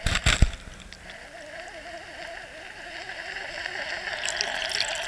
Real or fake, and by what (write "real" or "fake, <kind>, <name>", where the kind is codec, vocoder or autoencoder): real